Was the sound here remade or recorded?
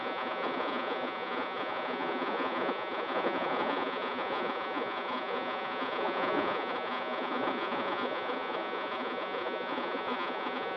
remade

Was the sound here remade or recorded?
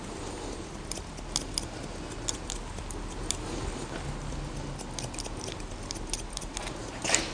recorded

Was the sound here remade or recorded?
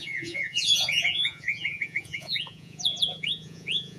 remade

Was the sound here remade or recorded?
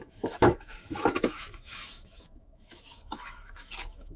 remade